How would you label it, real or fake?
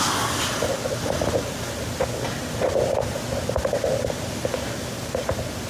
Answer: real